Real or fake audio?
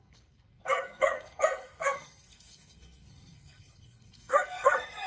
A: fake